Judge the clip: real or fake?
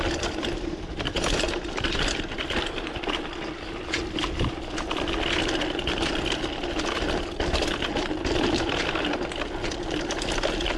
fake